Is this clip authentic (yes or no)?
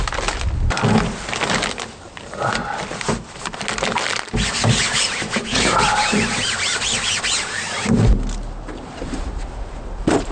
yes